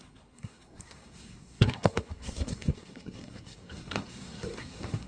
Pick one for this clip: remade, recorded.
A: remade